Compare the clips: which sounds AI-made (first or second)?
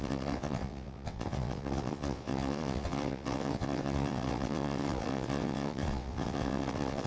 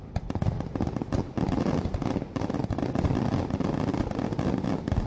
first